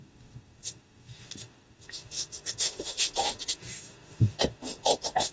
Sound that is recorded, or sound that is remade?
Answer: remade